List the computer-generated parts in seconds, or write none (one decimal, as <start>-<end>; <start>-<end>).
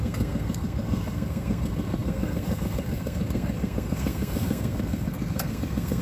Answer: 0.0-6.0